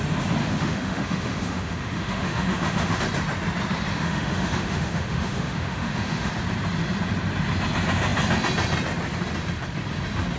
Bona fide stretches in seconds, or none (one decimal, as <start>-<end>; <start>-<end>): 0.0-0.4; 3.0-3.9; 6.3-10.4